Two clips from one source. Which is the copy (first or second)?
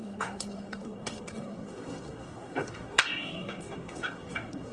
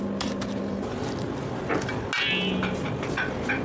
first